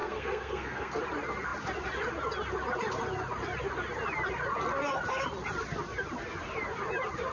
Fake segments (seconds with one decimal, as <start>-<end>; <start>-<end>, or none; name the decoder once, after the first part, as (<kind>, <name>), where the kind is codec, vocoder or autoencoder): 0.0-1.0 (codec, SNAC)